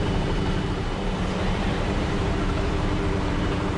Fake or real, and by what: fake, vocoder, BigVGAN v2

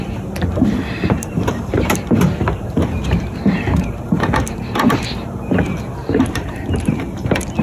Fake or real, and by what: fake, vocoder, BigVGAN v2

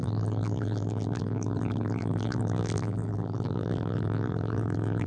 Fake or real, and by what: fake, vocoder, BigVGAN v2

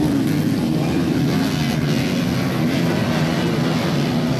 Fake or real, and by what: real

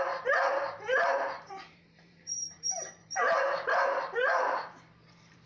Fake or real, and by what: fake, vocoder, BigVGAN v2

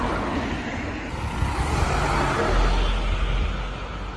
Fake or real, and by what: real